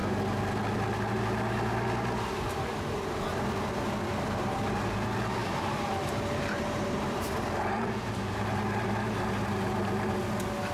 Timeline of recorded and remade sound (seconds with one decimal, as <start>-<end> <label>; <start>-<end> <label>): 0.0-5.4 recorded; 5.4-10.1 remade; 10.1-10.7 recorded